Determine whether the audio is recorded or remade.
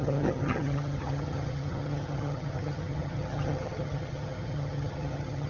remade